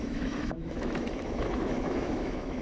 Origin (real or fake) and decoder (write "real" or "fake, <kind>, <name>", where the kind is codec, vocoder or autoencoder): fake, autoencoder, DAC-VAE